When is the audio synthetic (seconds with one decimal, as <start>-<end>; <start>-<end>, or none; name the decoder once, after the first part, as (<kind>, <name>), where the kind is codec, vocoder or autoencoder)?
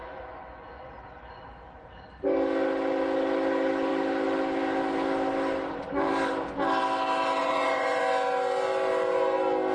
0.0-0.9 (vocoder, Vocos); 7.4-8.0